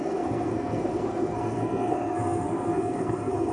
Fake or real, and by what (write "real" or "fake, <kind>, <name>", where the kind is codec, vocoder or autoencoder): fake, codec, SNAC